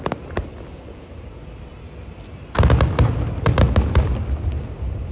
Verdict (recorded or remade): recorded